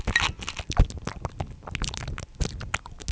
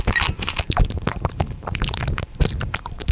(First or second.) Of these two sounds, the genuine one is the first